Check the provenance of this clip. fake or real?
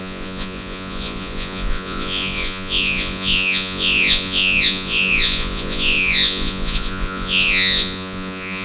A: fake